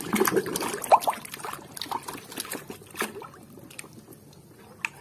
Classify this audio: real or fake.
real